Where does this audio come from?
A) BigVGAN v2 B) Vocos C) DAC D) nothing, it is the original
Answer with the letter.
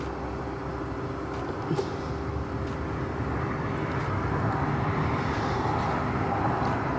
D